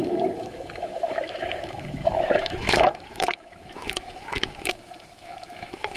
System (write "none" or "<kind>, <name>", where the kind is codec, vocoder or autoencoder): autoencoder, DAC-VAE